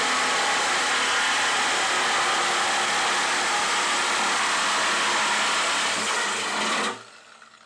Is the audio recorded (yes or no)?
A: yes